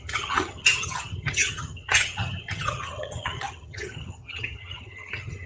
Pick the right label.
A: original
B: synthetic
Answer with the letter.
B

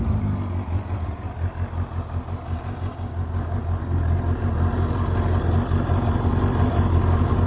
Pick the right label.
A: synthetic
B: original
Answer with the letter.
B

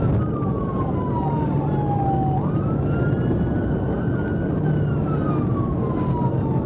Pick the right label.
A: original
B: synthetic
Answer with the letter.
A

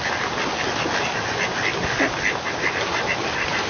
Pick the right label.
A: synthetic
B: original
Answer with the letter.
B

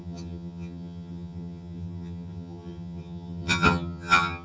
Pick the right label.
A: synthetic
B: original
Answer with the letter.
A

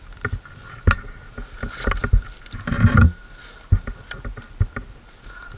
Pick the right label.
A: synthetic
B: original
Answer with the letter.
B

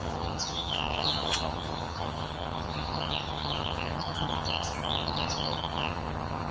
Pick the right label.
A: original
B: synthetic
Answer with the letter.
B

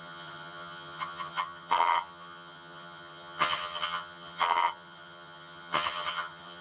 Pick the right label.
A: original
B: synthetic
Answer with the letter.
B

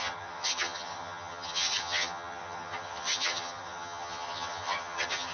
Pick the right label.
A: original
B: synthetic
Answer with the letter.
B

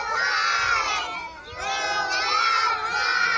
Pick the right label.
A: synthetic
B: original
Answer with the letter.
B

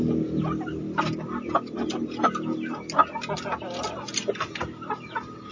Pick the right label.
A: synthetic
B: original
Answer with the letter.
B